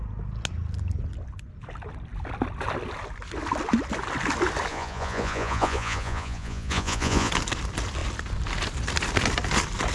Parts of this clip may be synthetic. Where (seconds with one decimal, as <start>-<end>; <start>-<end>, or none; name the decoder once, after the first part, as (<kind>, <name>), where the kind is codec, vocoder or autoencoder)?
4.7-7.3 (vocoder, Vocos)